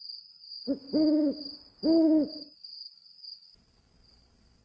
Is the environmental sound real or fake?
real